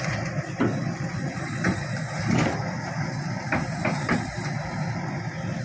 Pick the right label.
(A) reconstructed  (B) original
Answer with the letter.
B